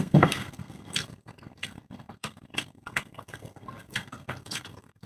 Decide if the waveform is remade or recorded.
remade